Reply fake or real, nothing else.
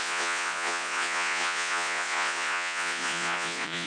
fake